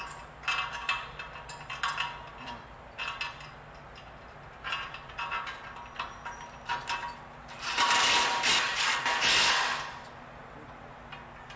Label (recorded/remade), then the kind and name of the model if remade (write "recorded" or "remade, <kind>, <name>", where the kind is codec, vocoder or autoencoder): recorded